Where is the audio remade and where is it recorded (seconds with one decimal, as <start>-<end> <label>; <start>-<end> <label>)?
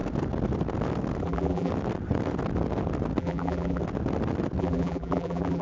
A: 0.0-1.2 recorded; 1.2-1.7 remade; 1.7-3.2 recorded; 3.2-3.8 remade; 3.8-4.6 recorded; 4.6-5.6 remade